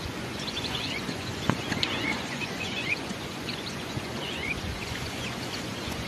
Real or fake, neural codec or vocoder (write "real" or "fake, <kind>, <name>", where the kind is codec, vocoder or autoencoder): fake, vocoder, Vocos